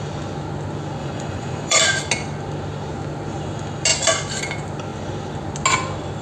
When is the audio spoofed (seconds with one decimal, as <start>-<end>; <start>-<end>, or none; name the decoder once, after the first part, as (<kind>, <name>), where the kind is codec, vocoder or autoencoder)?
1.0-1.8 (vocoder, Vocos)